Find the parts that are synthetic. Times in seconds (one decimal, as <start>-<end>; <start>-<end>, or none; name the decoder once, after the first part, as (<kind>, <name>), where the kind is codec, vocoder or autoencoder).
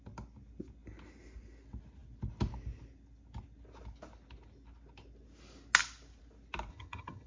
6.7-7.3 (vocoder, HiFi-GAN)